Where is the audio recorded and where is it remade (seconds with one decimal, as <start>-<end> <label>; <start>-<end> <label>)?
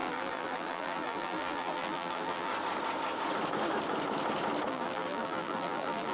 0.0-2.5 remade; 2.5-4.7 recorded; 4.7-6.1 remade